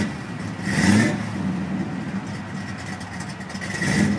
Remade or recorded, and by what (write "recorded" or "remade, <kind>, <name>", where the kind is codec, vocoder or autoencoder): recorded